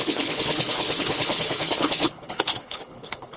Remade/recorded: remade